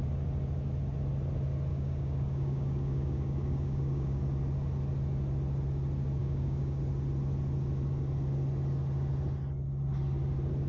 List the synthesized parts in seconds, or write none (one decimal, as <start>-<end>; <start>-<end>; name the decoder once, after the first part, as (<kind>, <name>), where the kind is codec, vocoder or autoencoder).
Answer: 1.7-4.2 (codec, DAC); 6.2-6.8